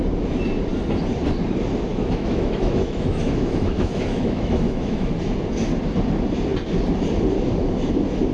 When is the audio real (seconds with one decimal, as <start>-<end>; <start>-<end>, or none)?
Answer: 0.0-1.9; 5.1-8.3